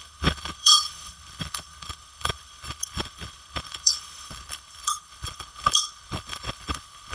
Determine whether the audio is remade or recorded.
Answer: remade